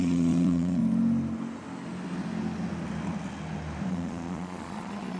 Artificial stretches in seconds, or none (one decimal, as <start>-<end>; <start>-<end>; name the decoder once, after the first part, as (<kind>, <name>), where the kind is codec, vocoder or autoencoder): 0.0-0.8 (vocoder, Vocos); 3.9-5.2